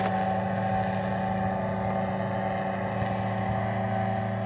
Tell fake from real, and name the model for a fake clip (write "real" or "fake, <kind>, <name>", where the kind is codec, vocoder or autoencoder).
real